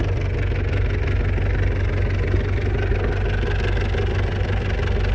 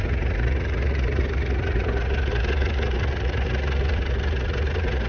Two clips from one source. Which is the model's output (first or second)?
second